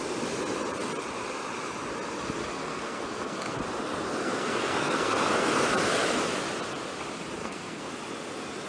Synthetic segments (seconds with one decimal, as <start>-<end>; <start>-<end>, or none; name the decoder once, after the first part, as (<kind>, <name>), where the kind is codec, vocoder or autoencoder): 2.4-3.6 (codec, SNAC); 4.2-5.6; 7.4-7.9

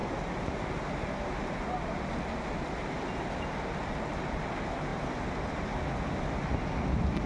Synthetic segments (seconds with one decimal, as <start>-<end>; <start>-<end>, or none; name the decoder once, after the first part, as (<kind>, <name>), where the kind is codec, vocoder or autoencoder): none